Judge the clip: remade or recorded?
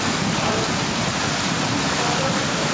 recorded